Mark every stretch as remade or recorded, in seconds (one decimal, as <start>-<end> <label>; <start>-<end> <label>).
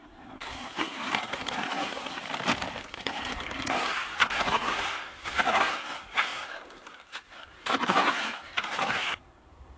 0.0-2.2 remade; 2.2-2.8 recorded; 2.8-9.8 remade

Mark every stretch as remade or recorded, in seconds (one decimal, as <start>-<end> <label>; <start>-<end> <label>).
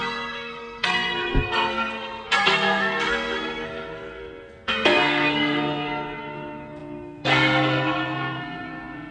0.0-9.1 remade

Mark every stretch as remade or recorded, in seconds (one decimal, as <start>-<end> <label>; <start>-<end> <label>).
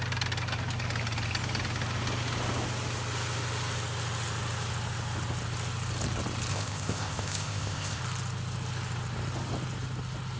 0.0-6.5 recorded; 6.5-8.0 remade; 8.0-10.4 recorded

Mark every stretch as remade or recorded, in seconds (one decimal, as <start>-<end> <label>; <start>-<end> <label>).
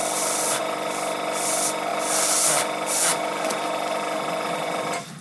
0.0-5.2 recorded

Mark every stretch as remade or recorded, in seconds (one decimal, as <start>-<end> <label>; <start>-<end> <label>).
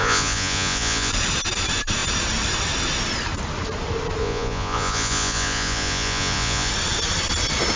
0.0-1.1 remade; 1.1-4.2 recorded; 4.2-6.7 remade; 6.7-7.8 recorded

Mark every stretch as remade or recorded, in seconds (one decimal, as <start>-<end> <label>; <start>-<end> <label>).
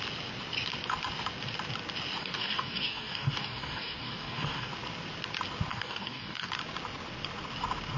0.0-2.2 recorded; 2.2-4.7 remade; 4.7-5.7 recorded; 5.7-6.5 remade; 6.5-8.0 recorded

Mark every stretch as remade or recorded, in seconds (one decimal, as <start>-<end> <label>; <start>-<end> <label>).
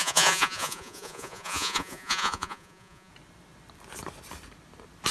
0.0-3.1 remade; 3.1-5.1 recorded